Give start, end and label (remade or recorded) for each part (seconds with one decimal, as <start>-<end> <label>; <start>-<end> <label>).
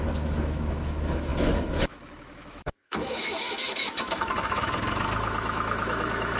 0.0-6.4 remade